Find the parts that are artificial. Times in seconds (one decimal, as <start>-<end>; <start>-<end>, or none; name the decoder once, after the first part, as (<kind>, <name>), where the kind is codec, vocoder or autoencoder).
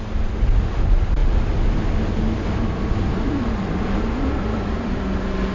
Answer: none